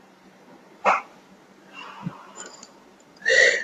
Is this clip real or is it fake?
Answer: fake